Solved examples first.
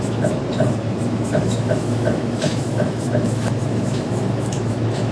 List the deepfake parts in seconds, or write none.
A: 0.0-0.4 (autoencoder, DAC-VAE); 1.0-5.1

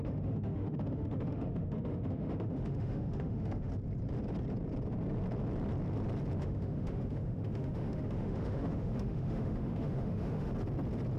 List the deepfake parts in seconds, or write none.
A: 0.0-3.7 (autoencoder, DAC-VAE); 6.4-10.5

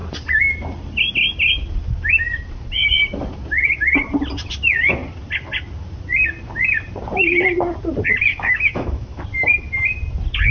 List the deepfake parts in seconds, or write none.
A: 8.3-9.2 (autoencoder, DAC-VAE)

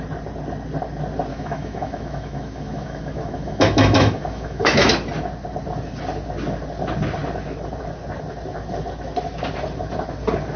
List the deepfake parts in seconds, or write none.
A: 1.3-4.9 (autoencoder, DAC-VAE)

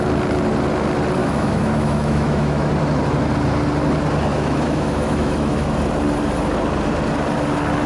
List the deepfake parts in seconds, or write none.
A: 1.2-2.7 (autoencoder, DAC-VAE); 4.3-5.7

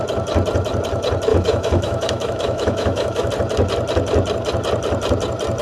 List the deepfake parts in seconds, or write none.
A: 1.3-3.3 (autoencoder, DAC-VAE)

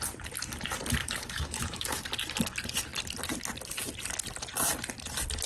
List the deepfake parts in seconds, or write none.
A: 1.0-2.1 (autoencoder, DAC-VAE)